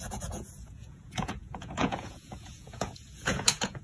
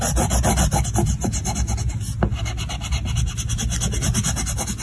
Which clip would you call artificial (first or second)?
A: first